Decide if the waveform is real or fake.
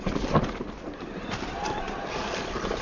fake